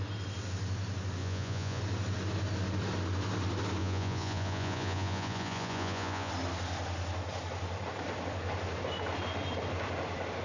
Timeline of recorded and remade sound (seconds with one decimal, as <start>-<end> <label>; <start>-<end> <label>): 0.0-1.2 recorded; 1.2-1.8 remade; 1.8-3.8 recorded; 3.8-6.3 remade; 6.3-10.4 recorded